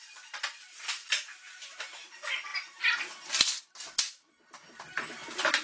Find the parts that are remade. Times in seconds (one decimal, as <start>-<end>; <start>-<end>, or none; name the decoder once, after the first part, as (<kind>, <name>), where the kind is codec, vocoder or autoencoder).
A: none